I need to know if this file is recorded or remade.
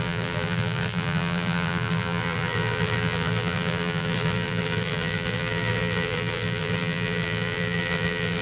remade